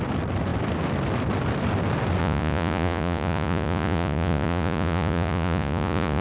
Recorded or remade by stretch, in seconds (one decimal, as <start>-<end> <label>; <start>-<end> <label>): 0.0-2.2 recorded; 2.2-6.2 remade